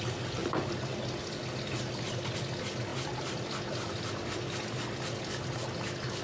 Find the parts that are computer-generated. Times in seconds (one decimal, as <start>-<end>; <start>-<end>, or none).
0.4-1.1; 2.9-4.4